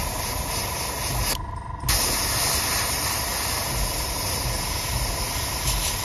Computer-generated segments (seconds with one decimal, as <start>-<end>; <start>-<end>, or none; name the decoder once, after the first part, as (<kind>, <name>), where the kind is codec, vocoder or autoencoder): none